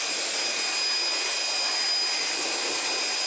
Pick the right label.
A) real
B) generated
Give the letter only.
A